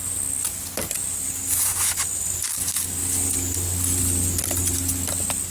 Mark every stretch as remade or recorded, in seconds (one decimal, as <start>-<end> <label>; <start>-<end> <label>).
0.0-5.5 recorded